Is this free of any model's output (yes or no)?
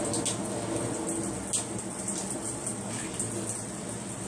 yes